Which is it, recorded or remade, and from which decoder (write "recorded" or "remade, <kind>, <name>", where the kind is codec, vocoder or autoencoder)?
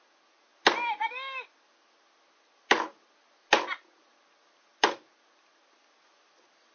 recorded